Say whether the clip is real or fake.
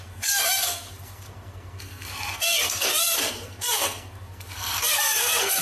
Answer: fake